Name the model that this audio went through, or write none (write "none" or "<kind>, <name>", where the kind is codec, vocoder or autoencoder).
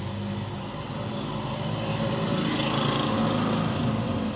none